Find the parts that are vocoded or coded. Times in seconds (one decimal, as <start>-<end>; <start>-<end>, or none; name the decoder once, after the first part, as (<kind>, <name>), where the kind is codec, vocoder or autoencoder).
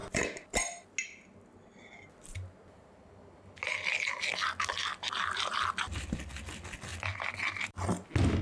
none